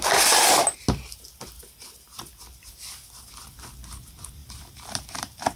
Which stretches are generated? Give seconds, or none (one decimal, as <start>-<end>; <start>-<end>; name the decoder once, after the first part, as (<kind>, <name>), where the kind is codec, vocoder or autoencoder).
4.4-5.6 (vocoder, BigVGAN v2)

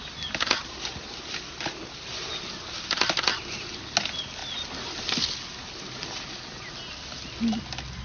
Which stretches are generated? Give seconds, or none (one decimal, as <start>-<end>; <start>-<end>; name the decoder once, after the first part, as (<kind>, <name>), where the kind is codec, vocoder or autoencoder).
none